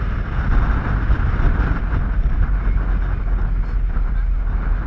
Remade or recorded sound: recorded